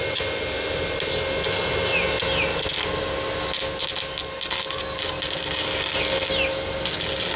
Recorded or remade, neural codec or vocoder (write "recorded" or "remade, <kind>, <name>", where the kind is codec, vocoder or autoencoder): recorded